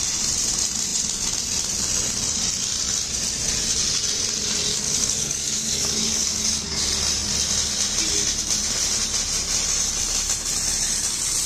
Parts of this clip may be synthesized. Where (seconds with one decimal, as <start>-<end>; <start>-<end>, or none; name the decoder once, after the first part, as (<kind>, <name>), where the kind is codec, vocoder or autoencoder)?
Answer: 4.7-6.8 (codec, DAC)